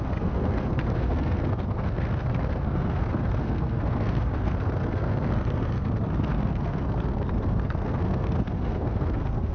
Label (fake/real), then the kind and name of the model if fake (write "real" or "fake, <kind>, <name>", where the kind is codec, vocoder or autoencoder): fake, codec, SNAC